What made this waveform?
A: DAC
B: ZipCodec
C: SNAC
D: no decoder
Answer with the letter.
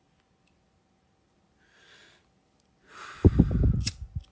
D